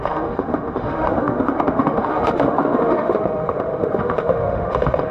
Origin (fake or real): fake